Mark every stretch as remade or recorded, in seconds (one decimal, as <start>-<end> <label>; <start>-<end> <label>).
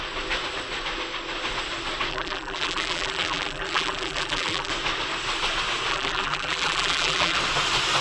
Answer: 0.0-2.1 recorded; 2.1-4.7 remade; 4.7-5.9 recorded; 5.9-7.4 remade; 7.4-8.0 recorded